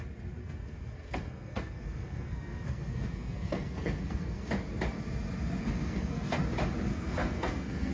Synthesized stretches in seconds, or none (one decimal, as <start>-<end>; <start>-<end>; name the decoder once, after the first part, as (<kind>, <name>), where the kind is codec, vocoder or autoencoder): 0.4-4.5 (codec, SNAC); 5.6-6.4; 6.9-7.9